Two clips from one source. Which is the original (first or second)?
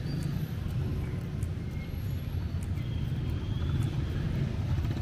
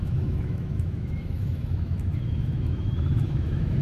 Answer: first